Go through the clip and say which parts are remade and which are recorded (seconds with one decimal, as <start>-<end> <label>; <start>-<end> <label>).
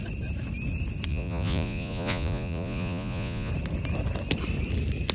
0.0-1.1 recorded; 1.1-3.5 remade; 3.5-5.1 recorded